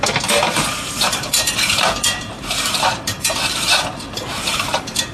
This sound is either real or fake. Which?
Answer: fake